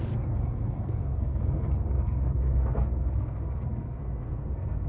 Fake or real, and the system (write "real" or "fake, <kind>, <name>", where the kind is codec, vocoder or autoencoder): fake, codec, SNAC